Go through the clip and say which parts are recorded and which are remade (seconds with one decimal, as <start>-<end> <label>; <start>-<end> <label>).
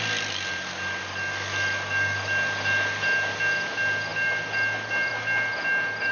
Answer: 0.0-6.1 recorded